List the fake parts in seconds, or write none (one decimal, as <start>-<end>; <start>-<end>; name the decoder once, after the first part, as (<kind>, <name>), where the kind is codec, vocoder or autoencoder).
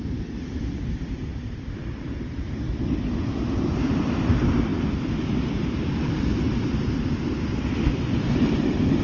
none